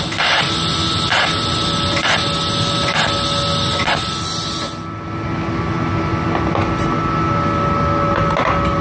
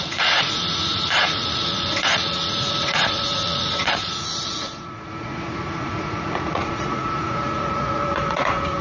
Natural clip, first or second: first